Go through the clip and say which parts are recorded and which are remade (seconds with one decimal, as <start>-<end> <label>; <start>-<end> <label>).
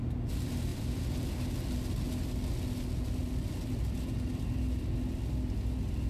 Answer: 0.0-0.7 recorded; 0.7-1.4 remade; 1.4-3.2 recorded; 3.2-4.9 remade; 4.9-6.1 recorded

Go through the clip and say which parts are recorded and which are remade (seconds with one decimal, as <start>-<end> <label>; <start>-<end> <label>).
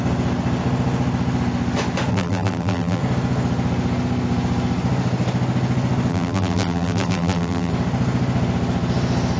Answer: 0.0-2.1 recorded; 2.1-3.0 remade; 3.0-6.1 recorded; 6.1-7.7 remade; 7.7-9.4 recorded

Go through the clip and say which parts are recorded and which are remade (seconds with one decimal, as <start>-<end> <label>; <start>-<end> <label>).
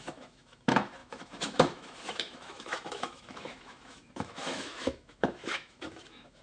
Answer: 0.0-6.4 remade